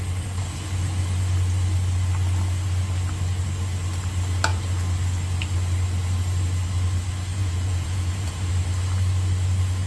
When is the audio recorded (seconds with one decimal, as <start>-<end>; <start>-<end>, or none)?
0.0-7.3; 8.5-9.9